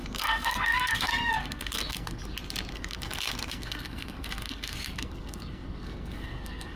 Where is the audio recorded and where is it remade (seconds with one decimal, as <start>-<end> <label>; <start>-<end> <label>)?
0.0-2.2 remade; 2.2-2.7 recorded; 2.7-6.8 remade